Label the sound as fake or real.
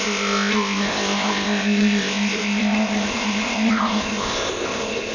fake